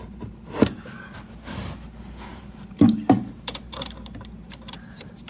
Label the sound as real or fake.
fake